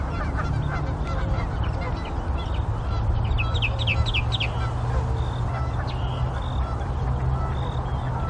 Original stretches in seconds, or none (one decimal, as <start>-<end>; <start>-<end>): 0.0-8.3